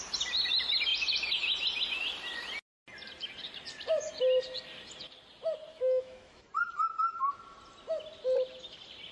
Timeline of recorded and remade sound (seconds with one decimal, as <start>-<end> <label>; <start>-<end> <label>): 0.0-5.7 recorded; 5.7-6.5 remade; 6.5-9.1 recorded